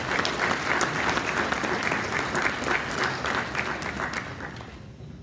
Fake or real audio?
real